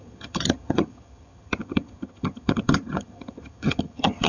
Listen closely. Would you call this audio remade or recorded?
remade